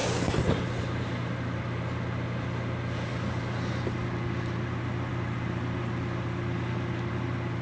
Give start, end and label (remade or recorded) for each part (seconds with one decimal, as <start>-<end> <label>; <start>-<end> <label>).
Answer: 0.0-7.6 recorded